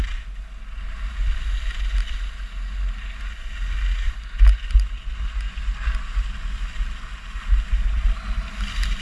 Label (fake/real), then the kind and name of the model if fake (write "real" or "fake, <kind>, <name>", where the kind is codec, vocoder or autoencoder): real